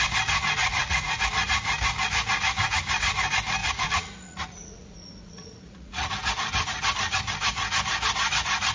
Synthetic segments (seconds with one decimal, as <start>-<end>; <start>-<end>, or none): 0.6-1.2; 3.6-6.1